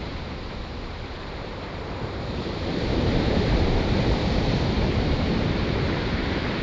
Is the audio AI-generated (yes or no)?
yes